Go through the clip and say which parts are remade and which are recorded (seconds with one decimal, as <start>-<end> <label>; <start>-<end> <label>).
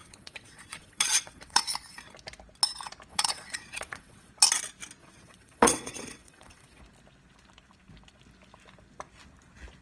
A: 0.0-1.7 remade; 1.7-3.1 recorded; 3.1-4.3 remade; 4.3-5.0 recorded; 5.0-6.8 remade; 6.8-9.8 recorded